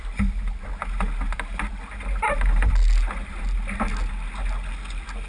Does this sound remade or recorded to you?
recorded